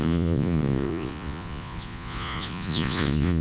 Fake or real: fake